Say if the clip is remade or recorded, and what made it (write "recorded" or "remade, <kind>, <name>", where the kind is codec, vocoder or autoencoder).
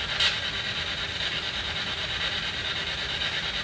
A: recorded